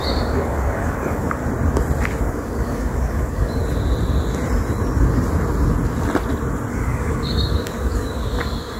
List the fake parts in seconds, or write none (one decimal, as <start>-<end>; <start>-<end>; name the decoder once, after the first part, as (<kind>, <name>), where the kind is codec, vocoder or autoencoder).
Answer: 0.0-1.4 (codec, DAC); 2.2-3.6; 6.7-8.8